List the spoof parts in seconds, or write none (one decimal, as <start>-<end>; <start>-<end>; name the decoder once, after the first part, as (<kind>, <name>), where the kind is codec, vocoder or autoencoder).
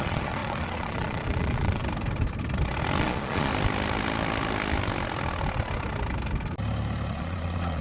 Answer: 0.0-1.8 (vocoder, Vocos); 3.0-3.5; 7.1-7.8